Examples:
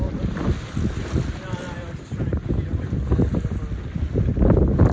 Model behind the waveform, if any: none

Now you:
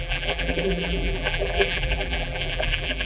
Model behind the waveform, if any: vocoder, BigVGAN v2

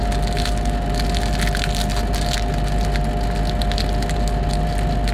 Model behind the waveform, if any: none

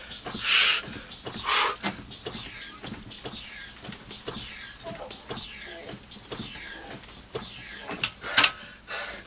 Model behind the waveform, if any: none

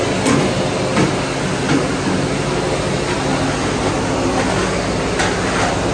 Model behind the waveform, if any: none